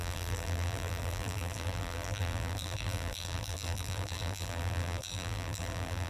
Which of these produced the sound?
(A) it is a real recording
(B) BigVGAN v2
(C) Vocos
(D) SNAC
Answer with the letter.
B